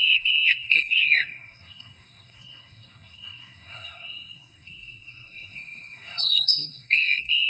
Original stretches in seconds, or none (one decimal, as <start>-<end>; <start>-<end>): none